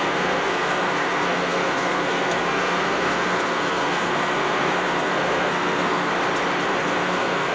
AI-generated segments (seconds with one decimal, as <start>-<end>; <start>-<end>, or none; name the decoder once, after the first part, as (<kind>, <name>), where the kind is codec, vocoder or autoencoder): 0.0-6.1 (codec, SNAC); 6.7-7.5